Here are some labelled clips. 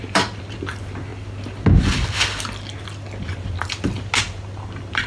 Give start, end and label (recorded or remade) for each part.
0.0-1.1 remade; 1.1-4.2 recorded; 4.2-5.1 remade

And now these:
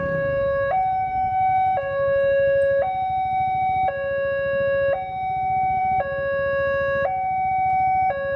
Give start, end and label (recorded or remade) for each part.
0.0-8.4 recorded

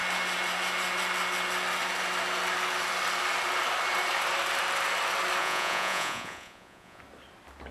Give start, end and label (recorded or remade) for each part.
0.0-5.4 recorded; 5.4-7.0 remade; 7.0-7.7 recorded

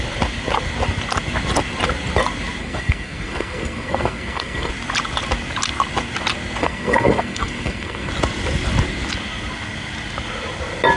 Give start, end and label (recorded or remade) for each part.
0.0-2.6 recorded; 2.6-4.7 remade; 4.7-6.6 recorded; 6.6-8.1 remade; 8.1-11.0 recorded

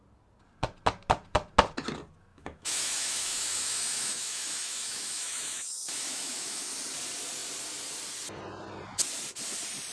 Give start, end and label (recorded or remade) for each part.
0.0-2.3 recorded; 2.3-6.7 remade; 6.7-9.9 recorded